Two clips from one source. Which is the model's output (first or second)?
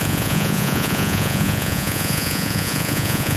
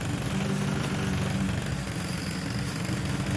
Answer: first